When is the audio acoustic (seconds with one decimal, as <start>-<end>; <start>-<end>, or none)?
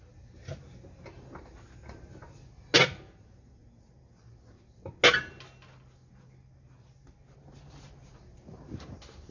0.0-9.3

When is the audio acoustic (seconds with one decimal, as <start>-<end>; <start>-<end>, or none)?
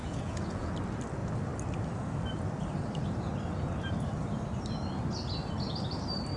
0.7-6.4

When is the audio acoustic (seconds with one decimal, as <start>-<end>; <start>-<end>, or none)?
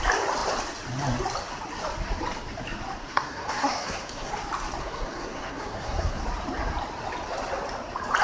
0.0-3.0; 4.3-4.8; 6.2-8.2